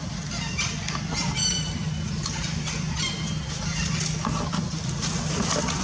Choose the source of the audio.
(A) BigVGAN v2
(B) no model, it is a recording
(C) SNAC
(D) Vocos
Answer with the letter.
B